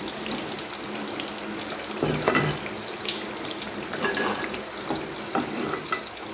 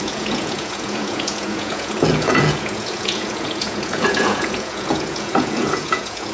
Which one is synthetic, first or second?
second